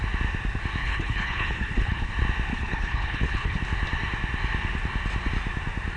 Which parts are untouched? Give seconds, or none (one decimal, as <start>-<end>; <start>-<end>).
0.0-0.8; 2.1-2.5; 3.6-6.0